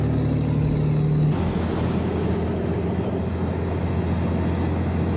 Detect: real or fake real